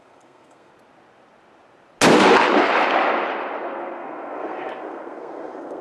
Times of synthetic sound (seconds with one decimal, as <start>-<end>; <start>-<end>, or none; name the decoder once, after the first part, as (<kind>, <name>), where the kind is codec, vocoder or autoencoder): 0.0-0.7 (codec, SNAC); 3.6-5.8